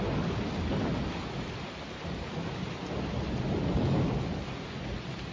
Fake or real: real